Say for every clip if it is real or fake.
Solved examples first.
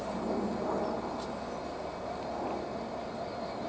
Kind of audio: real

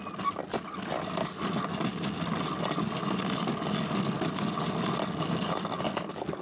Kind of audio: real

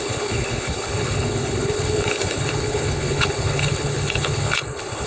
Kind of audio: fake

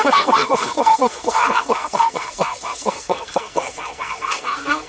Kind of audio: fake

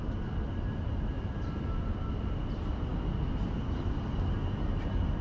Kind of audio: real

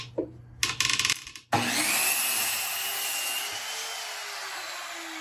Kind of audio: real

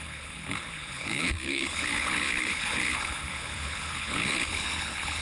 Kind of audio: fake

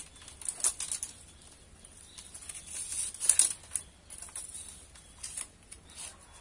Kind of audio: real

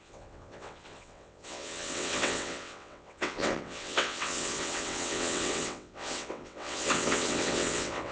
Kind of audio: fake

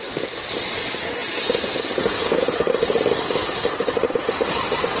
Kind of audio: real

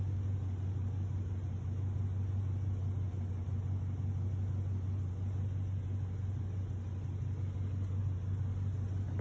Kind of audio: real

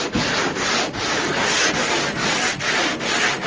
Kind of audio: real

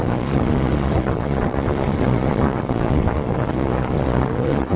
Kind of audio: fake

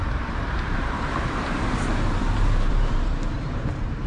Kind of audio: fake